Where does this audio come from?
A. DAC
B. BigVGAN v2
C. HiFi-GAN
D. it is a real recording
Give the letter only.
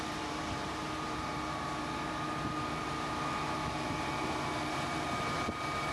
B